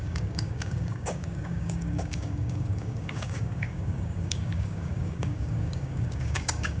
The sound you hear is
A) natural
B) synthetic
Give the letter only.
B